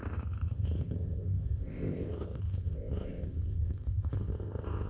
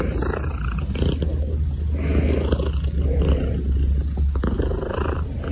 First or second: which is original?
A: second